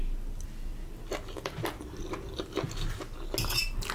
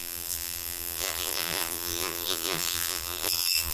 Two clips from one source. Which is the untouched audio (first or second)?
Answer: first